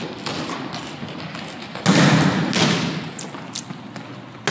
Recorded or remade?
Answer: recorded